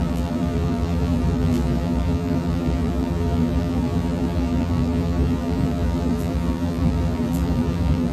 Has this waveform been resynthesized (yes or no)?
yes